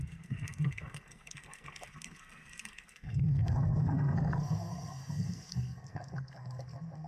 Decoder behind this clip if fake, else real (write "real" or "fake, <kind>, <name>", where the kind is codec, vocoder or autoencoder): fake, codec, SNAC